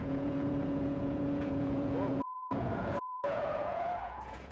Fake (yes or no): yes